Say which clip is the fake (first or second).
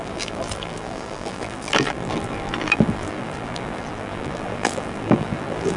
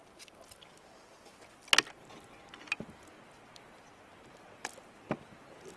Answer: first